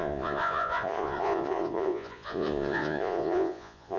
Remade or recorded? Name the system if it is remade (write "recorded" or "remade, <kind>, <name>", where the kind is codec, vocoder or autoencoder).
remade, vocoder, Vocos